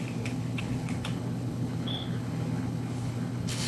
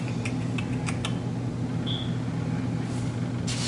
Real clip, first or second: second